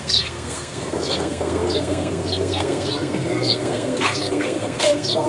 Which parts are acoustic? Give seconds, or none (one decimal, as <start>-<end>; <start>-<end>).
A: none